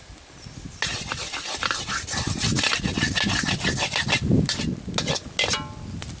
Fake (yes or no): no